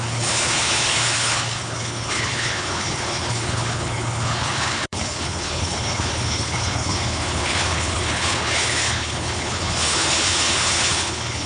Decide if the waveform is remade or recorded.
remade